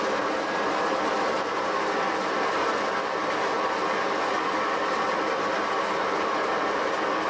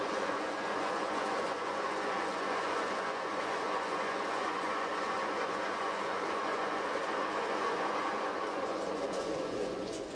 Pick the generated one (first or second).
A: second